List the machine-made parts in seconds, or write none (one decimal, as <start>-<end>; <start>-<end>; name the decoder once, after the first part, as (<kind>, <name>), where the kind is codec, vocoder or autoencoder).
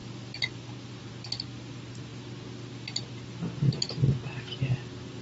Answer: none